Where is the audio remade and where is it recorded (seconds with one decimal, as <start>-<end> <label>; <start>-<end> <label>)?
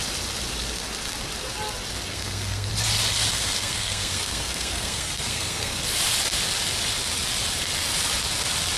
0.0-2.1 recorded; 2.1-2.7 remade; 2.7-3.3 recorded; 3.3-5.8 remade; 5.8-8.8 recorded